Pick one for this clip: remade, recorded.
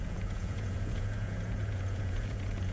remade